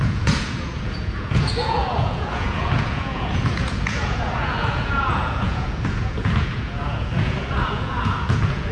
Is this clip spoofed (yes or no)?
yes